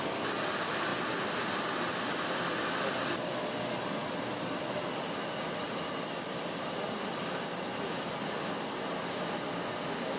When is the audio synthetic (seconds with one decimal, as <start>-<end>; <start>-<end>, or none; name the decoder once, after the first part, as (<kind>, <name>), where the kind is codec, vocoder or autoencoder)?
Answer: none